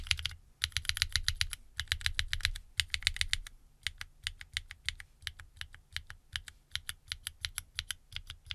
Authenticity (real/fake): real